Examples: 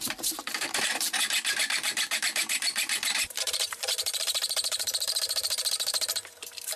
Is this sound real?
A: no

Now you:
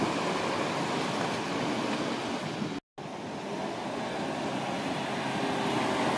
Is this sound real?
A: yes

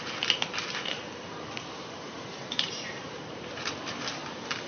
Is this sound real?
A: no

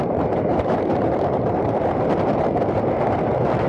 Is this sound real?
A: no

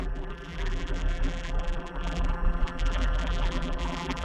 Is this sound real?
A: no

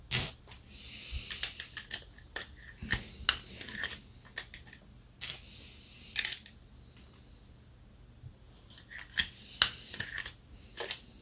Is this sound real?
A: yes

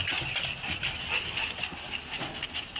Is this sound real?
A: yes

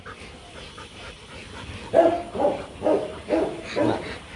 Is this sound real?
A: yes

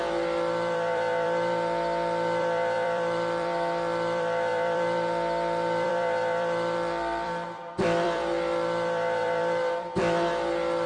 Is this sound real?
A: no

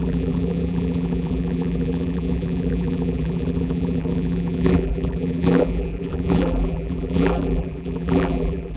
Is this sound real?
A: no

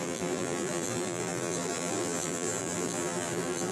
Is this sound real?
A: no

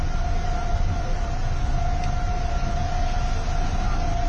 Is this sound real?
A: yes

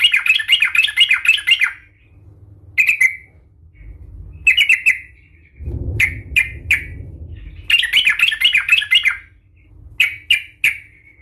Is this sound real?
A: yes